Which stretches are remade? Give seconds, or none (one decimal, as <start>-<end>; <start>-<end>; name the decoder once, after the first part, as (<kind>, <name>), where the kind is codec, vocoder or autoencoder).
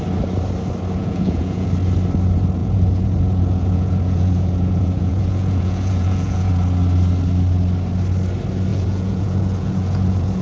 1.0-1.7 (vocoder, Vocos); 2.6-6.5; 8.7-10.4